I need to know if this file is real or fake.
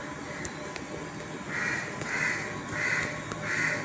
real